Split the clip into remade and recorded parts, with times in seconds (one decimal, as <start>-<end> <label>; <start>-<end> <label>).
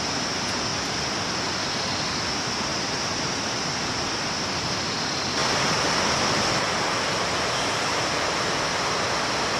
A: 0.0-9.6 recorded